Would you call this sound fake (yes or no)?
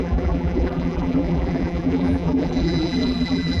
yes